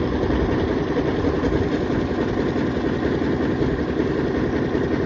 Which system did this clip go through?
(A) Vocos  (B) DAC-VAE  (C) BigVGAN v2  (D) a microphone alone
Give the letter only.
D